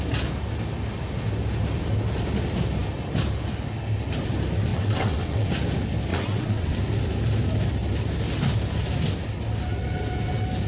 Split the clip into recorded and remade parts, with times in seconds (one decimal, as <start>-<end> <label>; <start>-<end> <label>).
0.0-4.7 recorded; 4.7-5.5 remade; 5.5-6.1 recorded; 6.1-6.8 remade; 6.8-10.7 recorded